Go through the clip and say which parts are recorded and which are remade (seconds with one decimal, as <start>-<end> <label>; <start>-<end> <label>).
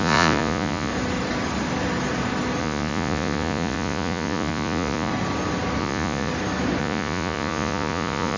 0.0-0.9 remade; 0.9-2.6 recorded; 2.6-5.1 remade; 5.1-5.8 recorded; 5.8-6.3 remade; 6.3-6.8 recorded; 6.8-8.4 remade